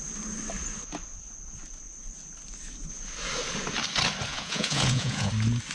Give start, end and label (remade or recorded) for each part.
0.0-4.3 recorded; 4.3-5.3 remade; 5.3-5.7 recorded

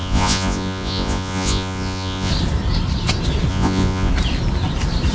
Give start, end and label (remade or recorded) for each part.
0.0-2.3 remade; 2.3-3.5 recorded; 3.5-4.1 remade; 4.1-5.1 recorded

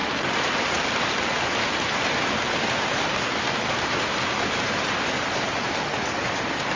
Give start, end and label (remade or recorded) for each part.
0.0-6.8 recorded

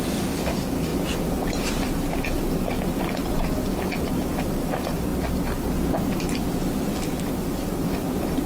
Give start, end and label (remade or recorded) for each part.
0.0-8.5 recorded

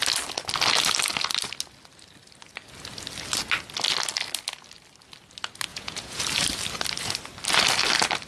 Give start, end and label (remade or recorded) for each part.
0.0-5.7 recorded; 5.7-6.2 remade; 6.2-8.3 recorded

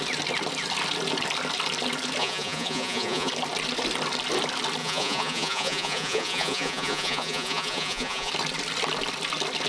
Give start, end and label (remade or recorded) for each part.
0.0-2.2 recorded; 2.2-3.3 remade; 3.3-4.8 recorded; 4.8-8.3 remade; 8.3-9.7 recorded